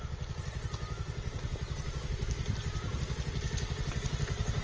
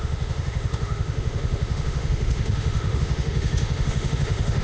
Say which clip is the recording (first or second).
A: first